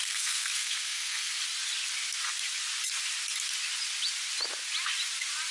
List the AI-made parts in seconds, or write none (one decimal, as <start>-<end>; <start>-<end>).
0.0-1.4